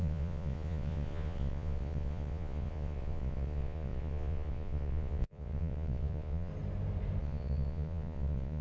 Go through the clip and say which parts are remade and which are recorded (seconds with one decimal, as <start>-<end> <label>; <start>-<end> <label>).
0.0-6.5 remade; 6.5-7.2 recorded; 7.2-8.6 remade